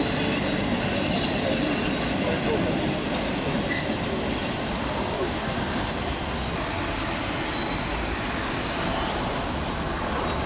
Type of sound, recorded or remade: recorded